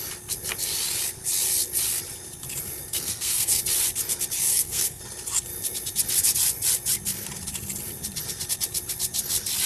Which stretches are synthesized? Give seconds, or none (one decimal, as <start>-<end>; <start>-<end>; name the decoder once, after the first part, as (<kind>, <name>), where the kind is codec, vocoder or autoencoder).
2.9-3.6 (codec, SNAC); 4.5-5.0